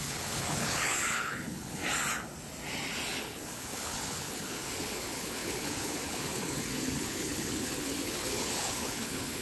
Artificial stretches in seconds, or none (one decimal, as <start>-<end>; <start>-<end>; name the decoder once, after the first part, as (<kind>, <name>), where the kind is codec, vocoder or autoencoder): 0.0-1.8 (codec, HILCodec); 3.2-9.4